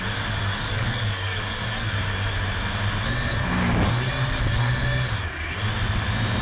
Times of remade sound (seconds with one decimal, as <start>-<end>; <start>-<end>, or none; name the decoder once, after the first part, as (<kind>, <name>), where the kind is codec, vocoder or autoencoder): 0.4-1.9 (codec, DAC)